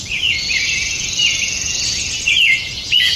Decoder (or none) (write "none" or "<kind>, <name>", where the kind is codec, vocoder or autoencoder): vocoder, Vocos